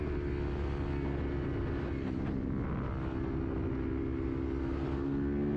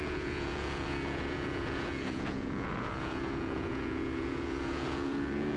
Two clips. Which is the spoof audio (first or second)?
second